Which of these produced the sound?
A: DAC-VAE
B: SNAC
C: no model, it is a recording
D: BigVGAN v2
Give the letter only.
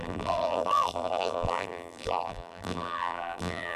D